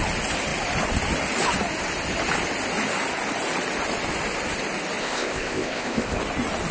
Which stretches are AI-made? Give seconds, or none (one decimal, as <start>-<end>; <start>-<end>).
5.0-6.2